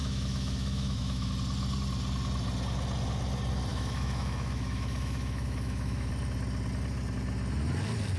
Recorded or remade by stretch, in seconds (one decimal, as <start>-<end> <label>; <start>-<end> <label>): 0.0-1.3 remade; 1.3-3.7 recorded; 3.7-6.1 remade; 6.1-8.2 recorded